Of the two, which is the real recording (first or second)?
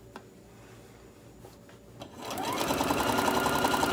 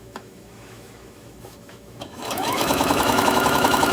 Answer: first